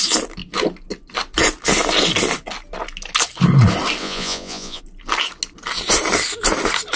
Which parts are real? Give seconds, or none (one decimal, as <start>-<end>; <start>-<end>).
0.0-4.0; 4.8-7.0